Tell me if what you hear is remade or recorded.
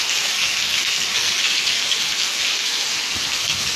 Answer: remade